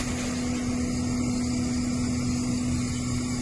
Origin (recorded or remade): recorded